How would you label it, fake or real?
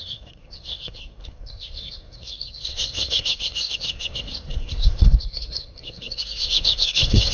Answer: fake